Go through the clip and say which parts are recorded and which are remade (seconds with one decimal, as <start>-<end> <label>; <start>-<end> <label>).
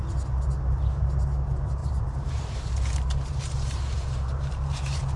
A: 0.0-1.8 recorded; 1.8-5.2 remade